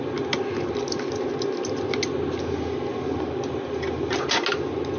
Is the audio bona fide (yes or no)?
yes